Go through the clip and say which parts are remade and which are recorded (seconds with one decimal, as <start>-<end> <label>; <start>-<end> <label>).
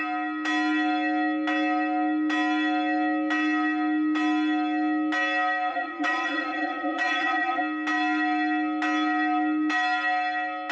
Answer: 0.0-5.7 recorded; 5.7-7.6 remade; 7.6-10.7 recorded